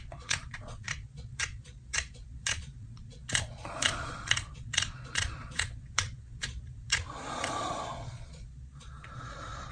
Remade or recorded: remade